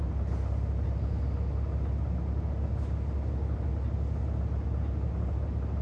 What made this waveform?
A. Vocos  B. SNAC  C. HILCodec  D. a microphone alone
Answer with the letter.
D